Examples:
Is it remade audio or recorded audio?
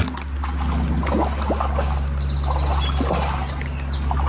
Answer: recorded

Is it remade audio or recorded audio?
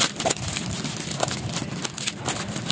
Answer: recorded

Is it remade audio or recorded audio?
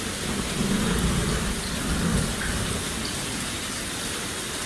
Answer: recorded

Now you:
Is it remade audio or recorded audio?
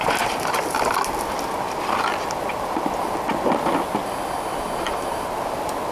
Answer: recorded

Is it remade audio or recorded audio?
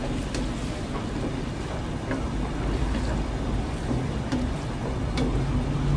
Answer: recorded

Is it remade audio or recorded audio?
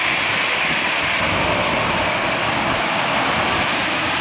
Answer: remade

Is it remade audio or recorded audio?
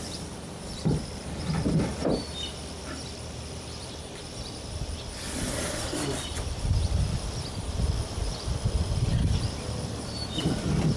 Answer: remade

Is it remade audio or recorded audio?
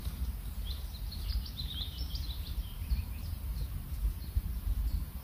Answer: remade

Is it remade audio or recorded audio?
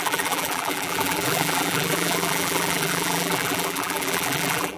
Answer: remade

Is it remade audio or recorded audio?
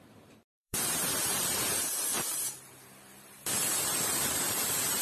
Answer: remade